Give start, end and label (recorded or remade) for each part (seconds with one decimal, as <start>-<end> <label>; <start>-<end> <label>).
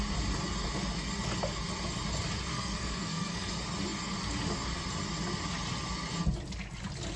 0.0-2.5 recorded; 2.5-3.5 remade; 3.5-7.2 recorded